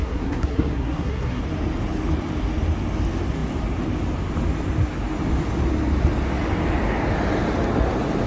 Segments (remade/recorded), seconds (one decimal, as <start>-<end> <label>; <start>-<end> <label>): 0.0-1.4 remade; 1.4-8.3 recorded